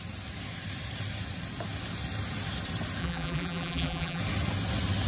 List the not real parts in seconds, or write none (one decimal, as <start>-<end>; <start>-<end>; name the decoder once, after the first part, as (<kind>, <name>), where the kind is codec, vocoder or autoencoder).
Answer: 3.0-4.2 (vocoder, BigVGAN v2)